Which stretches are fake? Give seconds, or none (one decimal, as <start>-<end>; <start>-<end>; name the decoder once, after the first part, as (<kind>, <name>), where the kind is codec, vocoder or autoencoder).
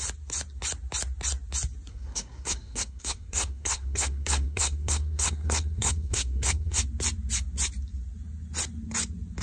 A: 1.9-6.8 (codec, SNAC)